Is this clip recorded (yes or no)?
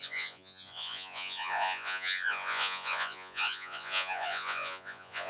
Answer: no